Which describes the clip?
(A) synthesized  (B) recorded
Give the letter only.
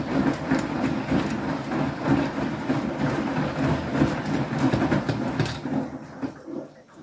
B